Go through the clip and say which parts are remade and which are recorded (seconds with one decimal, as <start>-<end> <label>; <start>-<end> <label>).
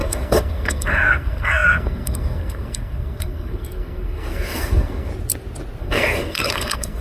0.0-5.1 remade; 5.1-5.8 recorded; 5.8-7.0 remade